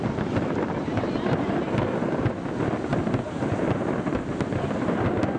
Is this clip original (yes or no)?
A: yes